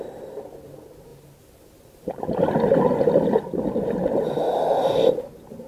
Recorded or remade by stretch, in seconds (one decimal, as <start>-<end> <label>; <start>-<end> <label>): 0.0-5.7 recorded

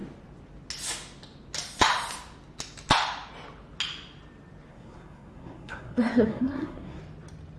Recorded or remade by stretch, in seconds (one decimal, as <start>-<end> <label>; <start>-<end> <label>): 0.0-4.7 recorded; 4.7-7.0 remade; 7.0-7.6 recorded